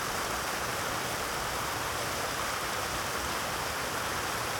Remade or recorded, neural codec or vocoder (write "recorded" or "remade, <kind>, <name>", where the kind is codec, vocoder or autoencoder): recorded